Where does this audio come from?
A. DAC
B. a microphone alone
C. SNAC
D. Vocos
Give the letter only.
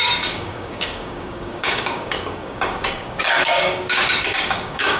A